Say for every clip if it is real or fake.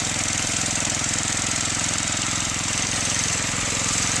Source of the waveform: fake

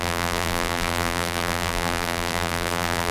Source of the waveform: fake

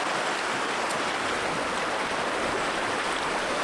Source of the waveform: real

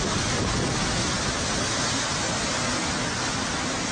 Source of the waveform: real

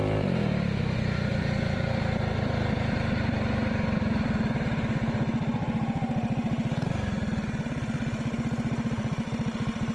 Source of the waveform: real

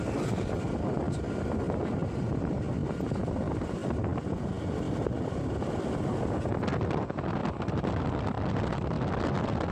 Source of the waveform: real